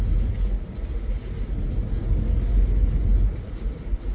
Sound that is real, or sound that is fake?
real